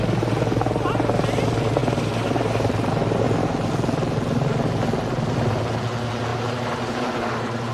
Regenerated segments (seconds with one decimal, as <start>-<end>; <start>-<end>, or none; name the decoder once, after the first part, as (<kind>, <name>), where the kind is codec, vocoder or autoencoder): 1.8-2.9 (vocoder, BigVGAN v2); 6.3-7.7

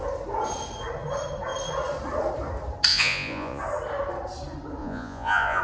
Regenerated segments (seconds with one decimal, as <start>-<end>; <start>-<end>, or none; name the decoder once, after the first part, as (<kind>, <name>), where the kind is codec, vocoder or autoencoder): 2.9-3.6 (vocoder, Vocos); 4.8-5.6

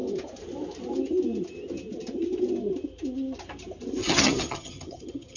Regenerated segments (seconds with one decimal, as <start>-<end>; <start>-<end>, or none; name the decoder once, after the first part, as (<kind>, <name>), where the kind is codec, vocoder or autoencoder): 4.0-5.4 (vocoder, HiFi-GAN)

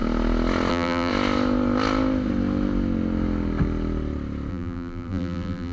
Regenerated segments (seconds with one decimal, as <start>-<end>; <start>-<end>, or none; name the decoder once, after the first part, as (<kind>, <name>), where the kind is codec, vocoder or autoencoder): 0.7-1.1 (vocoder, BigVGAN v2); 4.5-5.7